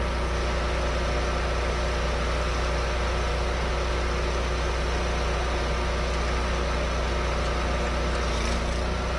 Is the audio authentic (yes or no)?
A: yes